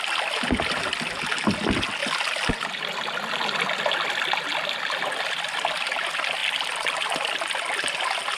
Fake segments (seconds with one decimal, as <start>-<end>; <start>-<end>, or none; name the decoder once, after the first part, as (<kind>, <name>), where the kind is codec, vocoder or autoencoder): none